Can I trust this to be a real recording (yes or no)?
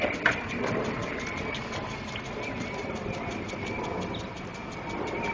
yes